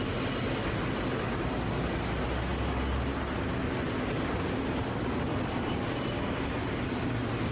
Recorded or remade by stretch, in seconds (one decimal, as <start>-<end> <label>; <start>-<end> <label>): 0.0-7.5 recorded